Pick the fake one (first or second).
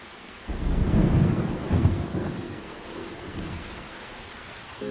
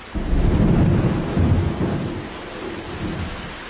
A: first